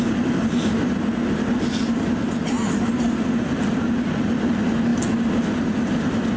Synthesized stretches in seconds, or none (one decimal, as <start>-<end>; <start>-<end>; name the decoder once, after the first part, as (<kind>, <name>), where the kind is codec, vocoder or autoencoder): none